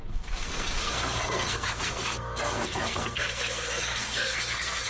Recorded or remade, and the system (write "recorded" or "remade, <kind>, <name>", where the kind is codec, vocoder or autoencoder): remade, codec, SNAC